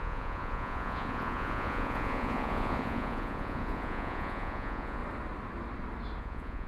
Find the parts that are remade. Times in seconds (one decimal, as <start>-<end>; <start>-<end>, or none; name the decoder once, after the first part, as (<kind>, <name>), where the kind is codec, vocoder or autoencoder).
0.0-5.0 (vocoder, Vocos); 6.2-6.7